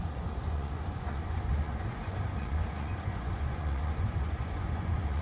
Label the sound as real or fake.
fake